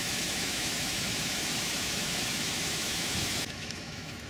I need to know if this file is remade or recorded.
remade